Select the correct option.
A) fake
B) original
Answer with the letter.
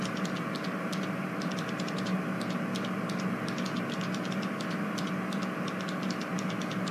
B